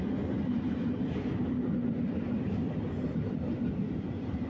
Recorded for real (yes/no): yes